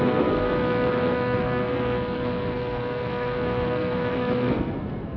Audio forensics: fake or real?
fake